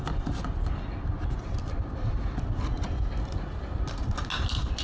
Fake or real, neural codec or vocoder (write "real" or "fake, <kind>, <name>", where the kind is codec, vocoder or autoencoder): real